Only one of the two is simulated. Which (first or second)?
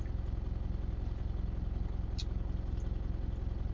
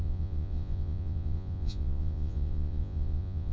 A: second